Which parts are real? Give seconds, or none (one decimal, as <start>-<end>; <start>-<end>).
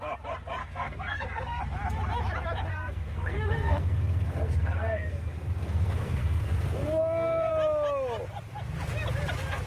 0.0-0.6; 1.6-2.7; 7.5-9.7